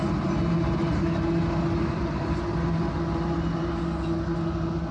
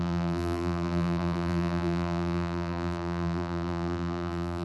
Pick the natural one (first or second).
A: first